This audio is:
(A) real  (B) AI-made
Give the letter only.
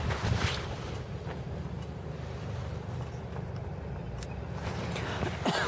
A